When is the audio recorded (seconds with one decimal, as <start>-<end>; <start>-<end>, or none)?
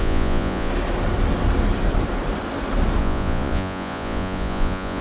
0.7-3.0